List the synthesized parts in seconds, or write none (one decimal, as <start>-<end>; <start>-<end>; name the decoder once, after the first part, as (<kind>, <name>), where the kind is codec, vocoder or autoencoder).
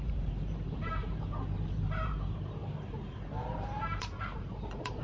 0.0-5.0 (vocoder, BigVGAN v2)